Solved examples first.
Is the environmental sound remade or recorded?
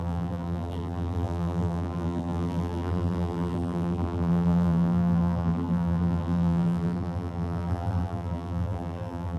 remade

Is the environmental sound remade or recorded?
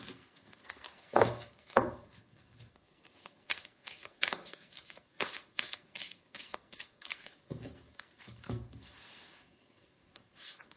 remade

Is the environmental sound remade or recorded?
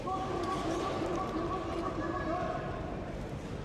remade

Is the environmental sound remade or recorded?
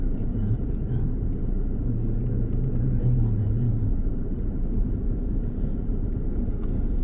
remade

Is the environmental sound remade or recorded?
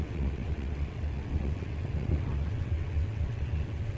remade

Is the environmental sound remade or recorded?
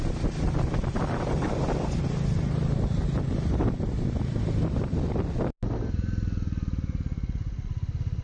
recorded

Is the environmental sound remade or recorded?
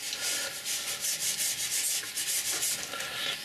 recorded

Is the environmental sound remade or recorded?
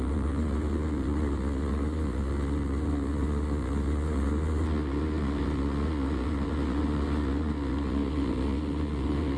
remade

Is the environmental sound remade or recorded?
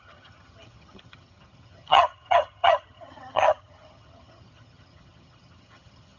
remade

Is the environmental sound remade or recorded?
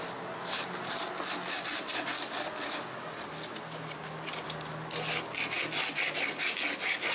recorded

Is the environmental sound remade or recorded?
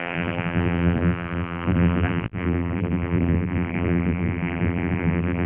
remade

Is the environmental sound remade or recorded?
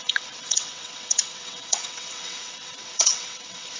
remade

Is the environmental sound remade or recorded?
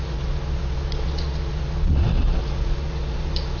remade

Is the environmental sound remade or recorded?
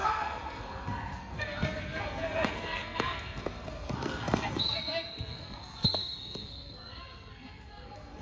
remade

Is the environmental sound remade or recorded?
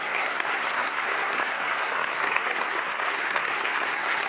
remade